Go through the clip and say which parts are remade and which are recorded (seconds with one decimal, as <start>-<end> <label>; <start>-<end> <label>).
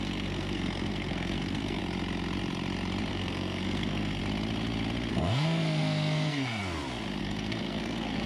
0.0-1.8 remade; 1.8-3.1 recorded; 3.1-4.2 remade; 4.2-5.1 recorded; 5.1-6.6 remade; 6.6-7.2 recorded; 7.2-8.3 remade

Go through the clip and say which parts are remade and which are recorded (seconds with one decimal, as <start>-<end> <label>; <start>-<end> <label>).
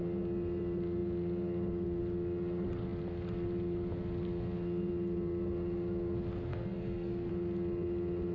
0.0-6.5 recorded; 6.5-7.3 remade; 7.3-8.3 recorded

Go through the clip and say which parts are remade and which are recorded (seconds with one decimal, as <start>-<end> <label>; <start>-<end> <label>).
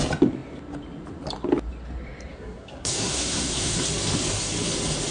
0.0-2.3 recorded; 2.3-3.8 remade; 3.8-5.1 recorded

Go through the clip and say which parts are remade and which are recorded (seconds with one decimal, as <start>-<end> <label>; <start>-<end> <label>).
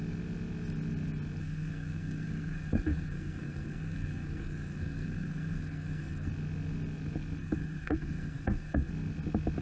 0.0-1.4 recorded; 1.4-6.3 remade; 6.3-7.4 recorded; 7.4-8.9 remade; 8.9-9.6 recorded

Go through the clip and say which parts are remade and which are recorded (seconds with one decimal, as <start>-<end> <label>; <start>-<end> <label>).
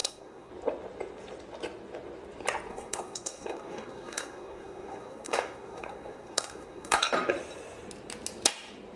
0.0-0.5 remade; 0.5-2.7 recorded; 2.7-7.1 remade; 7.1-9.0 recorded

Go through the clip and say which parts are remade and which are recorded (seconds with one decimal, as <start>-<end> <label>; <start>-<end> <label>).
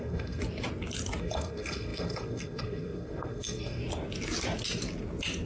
0.0-0.4 remade; 0.4-1.2 recorded; 1.2-3.8 remade; 3.8-5.5 recorded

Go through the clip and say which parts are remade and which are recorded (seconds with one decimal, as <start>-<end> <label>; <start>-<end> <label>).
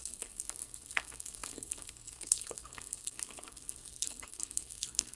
0.0-5.2 remade